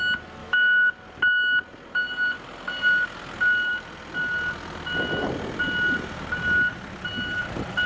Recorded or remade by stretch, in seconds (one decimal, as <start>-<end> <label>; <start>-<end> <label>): 0.0-0.4 recorded; 0.4-0.9 remade; 0.9-7.9 recorded